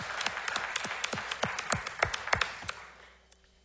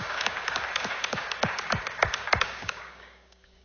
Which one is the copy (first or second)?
second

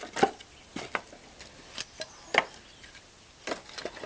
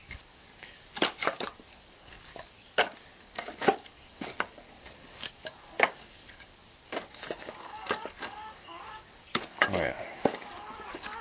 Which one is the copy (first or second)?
second